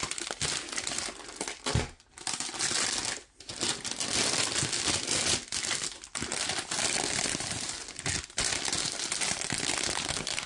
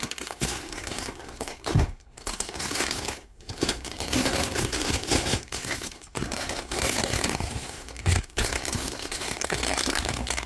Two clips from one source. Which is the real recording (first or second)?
first